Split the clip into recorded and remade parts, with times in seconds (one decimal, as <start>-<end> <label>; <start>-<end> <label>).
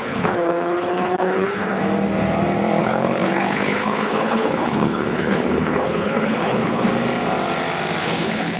0.0-1.8 remade; 1.8-2.8 recorded; 2.8-6.9 remade; 6.9-8.0 recorded; 8.0-8.6 remade